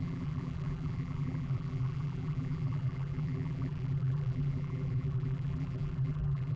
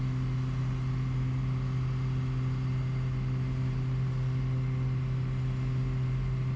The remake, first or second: first